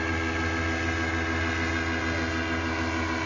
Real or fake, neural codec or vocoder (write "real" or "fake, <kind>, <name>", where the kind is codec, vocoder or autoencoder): real